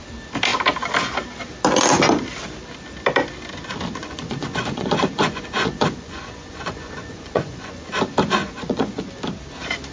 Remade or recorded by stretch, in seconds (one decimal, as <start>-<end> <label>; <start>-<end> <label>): 0.0-4.0 recorded; 4.0-7.9 remade; 7.9-8.4 recorded; 8.4-9.0 remade; 9.0-9.9 recorded

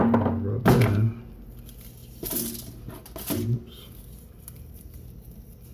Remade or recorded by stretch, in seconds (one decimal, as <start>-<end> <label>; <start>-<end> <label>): 0.0-5.7 recorded

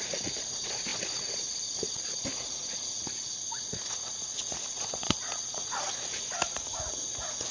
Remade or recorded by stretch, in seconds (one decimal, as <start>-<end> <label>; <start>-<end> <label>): 0.0-7.5 remade